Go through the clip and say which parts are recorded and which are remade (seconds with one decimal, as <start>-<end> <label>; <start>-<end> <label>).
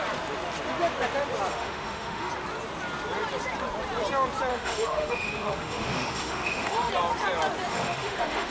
0.0-1.5 recorded; 1.5-2.3 remade; 2.3-4.5 recorded; 4.5-6.9 remade; 6.9-7.7 recorded; 7.7-8.5 remade